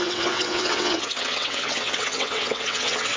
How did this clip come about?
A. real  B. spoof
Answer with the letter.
B